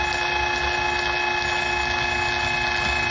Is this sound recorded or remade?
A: recorded